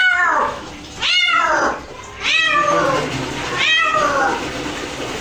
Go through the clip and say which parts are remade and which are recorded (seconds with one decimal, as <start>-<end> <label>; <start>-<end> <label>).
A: 0.0-0.7 remade; 0.7-5.2 recorded